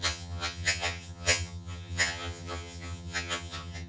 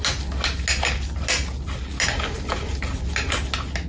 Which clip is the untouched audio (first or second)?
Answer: second